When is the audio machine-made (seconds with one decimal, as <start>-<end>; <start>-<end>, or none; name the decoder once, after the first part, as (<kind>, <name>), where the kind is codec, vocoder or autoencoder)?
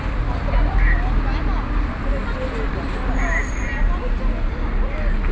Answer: none